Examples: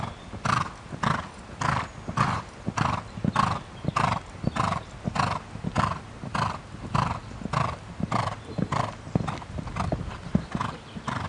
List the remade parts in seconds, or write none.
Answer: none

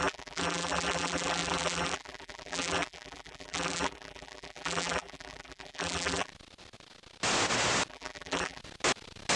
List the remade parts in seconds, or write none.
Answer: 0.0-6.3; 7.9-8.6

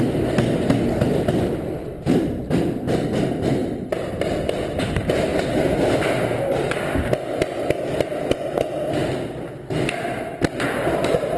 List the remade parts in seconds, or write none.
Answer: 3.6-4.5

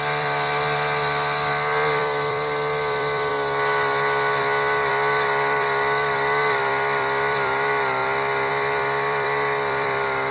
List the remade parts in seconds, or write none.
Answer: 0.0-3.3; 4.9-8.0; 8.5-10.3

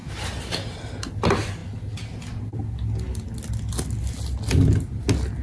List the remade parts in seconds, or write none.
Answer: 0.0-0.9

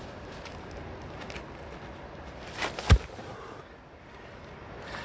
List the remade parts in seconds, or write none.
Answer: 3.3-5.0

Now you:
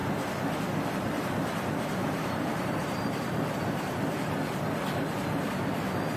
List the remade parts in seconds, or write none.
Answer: 2.0-3.5